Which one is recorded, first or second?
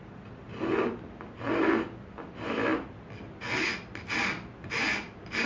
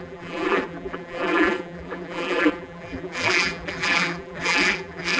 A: first